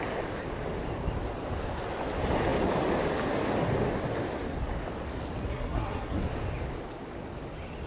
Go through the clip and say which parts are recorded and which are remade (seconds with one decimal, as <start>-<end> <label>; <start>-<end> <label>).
0.0-5.5 recorded; 5.5-6.2 remade; 6.2-7.9 recorded